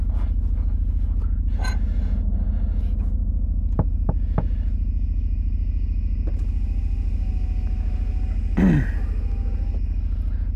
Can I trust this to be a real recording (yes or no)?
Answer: yes